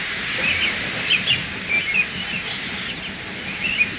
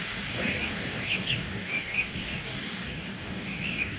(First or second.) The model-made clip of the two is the second